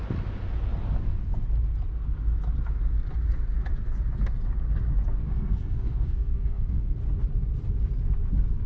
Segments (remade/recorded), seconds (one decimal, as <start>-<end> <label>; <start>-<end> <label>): 0.0-5.2 recorded; 5.2-7.0 remade; 7.0-8.7 recorded

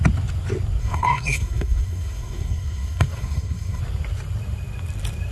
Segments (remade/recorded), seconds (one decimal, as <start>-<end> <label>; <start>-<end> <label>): 0.0-0.8 recorded; 0.8-3.8 remade; 3.8-5.3 recorded

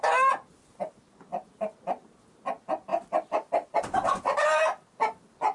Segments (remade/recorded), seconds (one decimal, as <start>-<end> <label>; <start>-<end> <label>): 0.0-5.5 recorded

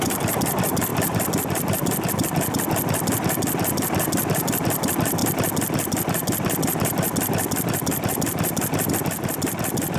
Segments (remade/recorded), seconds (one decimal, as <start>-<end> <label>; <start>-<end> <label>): 0.0-10.0 recorded

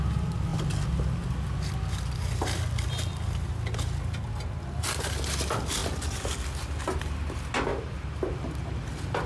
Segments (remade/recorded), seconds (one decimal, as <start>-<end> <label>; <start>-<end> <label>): 0.0-9.3 recorded

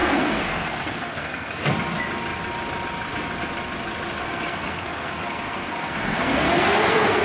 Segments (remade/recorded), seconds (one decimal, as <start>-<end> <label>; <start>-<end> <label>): 0.0-1.7 remade; 1.7-4.2 recorded; 4.2-7.2 remade

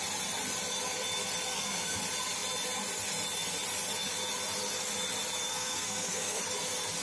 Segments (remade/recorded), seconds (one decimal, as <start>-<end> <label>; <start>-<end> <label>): 0.0-1.5 recorded; 1.5-2.0 remade; 2.0-5.5 recorded; 5.5-6.4 remade; 6.4-7.0 recorded

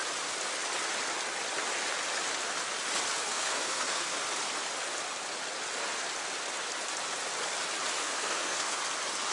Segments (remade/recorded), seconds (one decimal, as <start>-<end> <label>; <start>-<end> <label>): 0.0-3.2 recorded; 3.2-4.2 remade; 4.2-8.0 recorded; 8.0-8.8 remade; 8.8-9.3 recorded